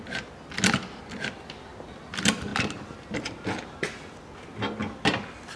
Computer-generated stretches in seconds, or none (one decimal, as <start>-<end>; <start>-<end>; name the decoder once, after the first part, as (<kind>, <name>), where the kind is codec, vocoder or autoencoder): none